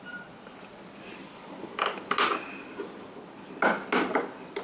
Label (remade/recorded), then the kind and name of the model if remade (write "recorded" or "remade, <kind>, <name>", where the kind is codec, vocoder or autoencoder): recorded